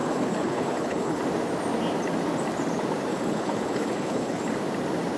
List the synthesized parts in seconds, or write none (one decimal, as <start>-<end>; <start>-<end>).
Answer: 0.0-1.2; 3.1-4.4